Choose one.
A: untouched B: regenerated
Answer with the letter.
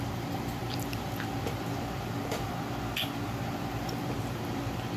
B